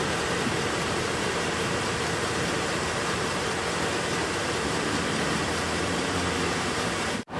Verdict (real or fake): fake